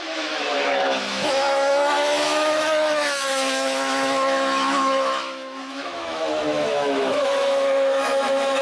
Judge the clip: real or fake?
fake